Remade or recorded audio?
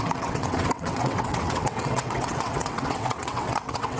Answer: remade